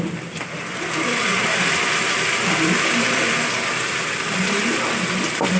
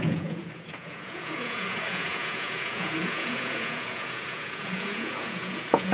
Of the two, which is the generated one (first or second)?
second